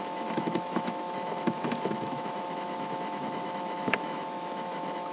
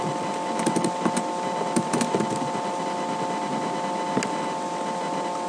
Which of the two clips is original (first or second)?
second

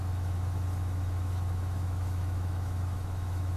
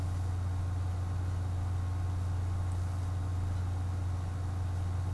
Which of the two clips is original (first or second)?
second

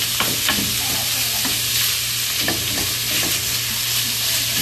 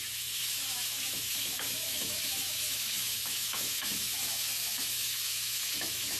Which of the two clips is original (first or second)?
first